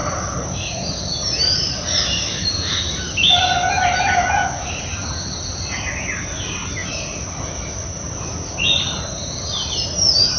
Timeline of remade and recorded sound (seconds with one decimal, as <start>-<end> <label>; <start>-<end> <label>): 0.0-10.4 recorded